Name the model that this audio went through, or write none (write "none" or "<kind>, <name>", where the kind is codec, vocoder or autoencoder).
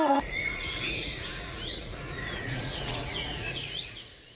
vocoder, Vocos